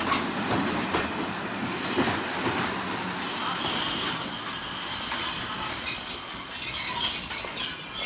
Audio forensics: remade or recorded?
recorded